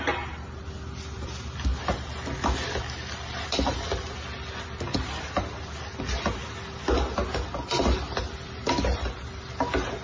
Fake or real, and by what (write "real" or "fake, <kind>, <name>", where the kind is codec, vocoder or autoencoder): real